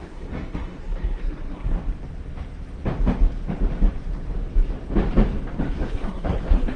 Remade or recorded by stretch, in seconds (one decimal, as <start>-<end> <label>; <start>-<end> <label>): 0.0-1.8 remade; 1.8-5.9 recorded; 5.9-6.8 remade